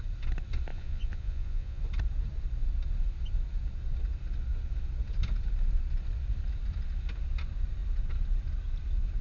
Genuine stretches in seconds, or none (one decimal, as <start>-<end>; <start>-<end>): 0.0-0.7; 1.8-9.2